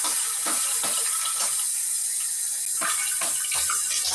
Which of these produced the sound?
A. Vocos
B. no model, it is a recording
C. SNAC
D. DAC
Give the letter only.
B